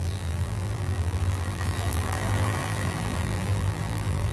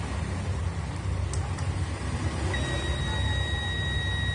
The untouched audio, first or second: second